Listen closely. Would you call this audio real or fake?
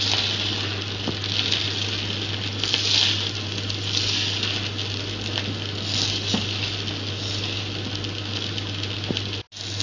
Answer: real